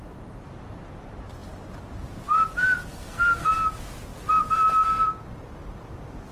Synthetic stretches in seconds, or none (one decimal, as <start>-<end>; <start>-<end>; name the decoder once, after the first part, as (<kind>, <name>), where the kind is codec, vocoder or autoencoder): 2.9-3.5 (codec, SNAC)